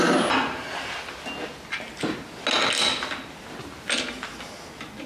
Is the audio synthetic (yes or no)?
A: no